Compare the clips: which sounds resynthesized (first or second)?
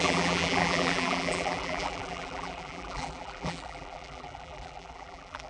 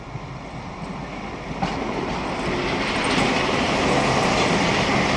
first